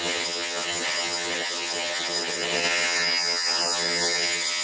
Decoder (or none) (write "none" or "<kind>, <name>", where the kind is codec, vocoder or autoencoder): vocoder, HiFi-GAN